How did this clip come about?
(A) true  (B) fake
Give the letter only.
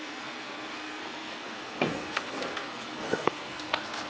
B